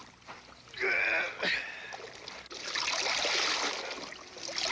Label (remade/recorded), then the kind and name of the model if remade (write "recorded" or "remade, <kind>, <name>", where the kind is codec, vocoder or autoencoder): recorded